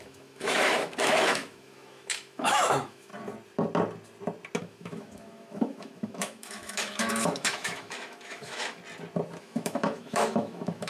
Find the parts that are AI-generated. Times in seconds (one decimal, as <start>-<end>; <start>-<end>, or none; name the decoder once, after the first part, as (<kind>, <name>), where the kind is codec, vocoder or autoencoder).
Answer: 0.0-3.1 (autoencoder, DAC-VAE); 4.6-8.8; 9.4-10.9